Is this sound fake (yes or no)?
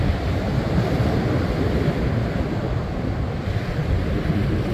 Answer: no